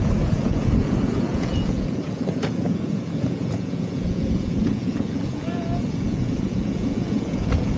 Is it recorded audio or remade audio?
remade